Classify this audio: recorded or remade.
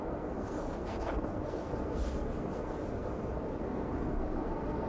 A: remade